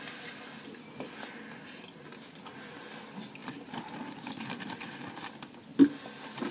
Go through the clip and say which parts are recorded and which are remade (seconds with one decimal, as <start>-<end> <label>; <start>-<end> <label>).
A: 0.0-3.4 recorded; 3.4-5.0 remade; 5.0-6.5 recorded